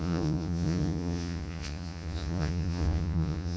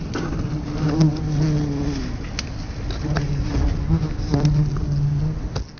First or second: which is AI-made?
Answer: first